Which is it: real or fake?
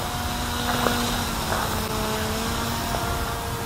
real